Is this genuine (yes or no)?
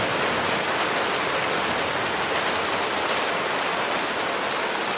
yes